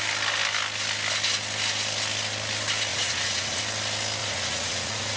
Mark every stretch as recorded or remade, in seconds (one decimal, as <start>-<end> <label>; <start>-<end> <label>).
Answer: 0.0-2.9 recorded; 2.9-3.6 remade; 3.6-4.2 recorded; 4.2-5.2 remade